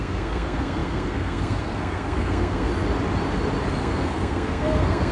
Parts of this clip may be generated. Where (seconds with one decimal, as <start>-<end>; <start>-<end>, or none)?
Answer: 0.0-2.7; 3.8-5.1